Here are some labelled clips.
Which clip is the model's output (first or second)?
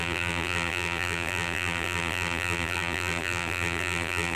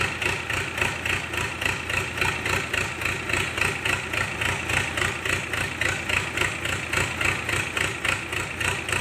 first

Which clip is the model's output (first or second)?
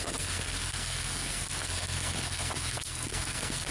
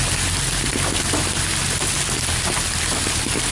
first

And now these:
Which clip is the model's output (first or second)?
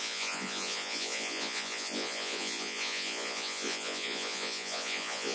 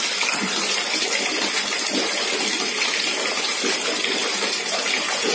first